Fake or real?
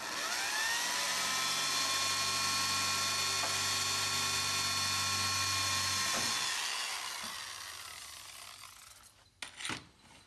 real